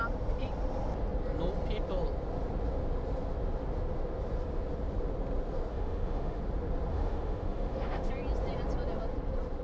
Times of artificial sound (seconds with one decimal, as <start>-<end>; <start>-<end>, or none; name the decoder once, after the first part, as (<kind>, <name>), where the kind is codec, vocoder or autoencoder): 5.7-6.4 (autoencoder, DAC-VAE); 6.9-8.1